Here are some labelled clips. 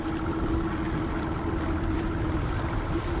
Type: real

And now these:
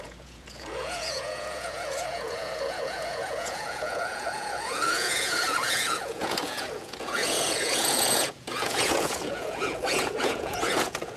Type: fake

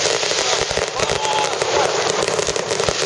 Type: fake